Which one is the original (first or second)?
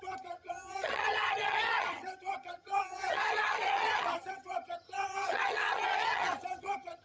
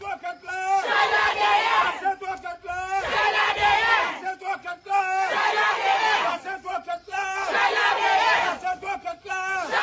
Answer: second